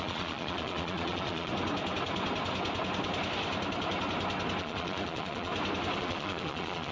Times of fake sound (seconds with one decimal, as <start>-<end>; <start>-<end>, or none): 0.0-1.5; 4.6-5.5; 6.0-6.9